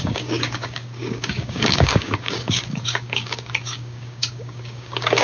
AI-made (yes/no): yes